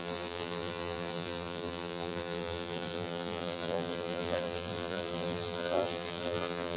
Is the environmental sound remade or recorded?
remade